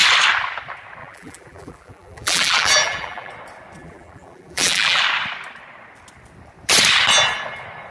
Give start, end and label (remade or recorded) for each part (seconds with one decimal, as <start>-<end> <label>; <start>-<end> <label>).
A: 0.0-1.0 recorded; 1.0-3.3 remade; 3.3-3.8 recorded; 3.8-5.0 remade; 5.0-7.9 recorded